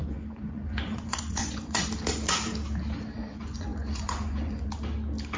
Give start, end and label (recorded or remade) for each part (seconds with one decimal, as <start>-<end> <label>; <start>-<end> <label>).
0.0-1.9 remade; 1.9-3.2 recorded; 3.2-4.7 remade; 4.7-5.4 recorded